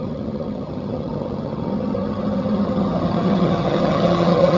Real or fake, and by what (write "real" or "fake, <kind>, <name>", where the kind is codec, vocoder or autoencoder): fake, vocoder, HiFi-GAN